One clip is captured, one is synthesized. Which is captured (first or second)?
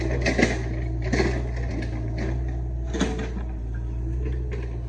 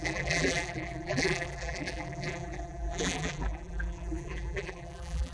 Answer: first